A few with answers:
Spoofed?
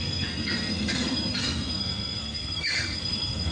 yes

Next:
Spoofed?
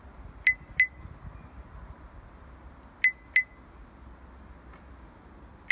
no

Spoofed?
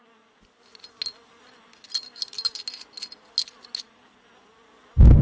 no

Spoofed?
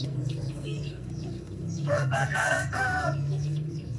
yes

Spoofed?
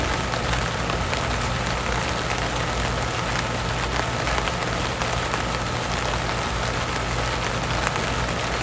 no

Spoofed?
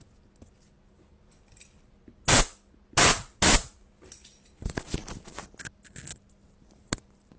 no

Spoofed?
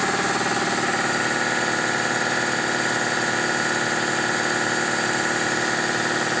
no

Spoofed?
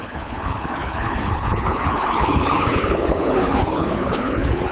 yes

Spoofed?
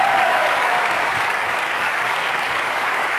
yes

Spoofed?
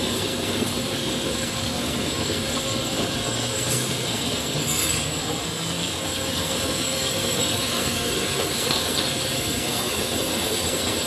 yes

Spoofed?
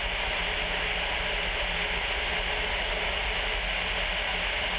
no